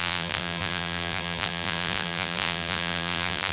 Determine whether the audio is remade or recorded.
remade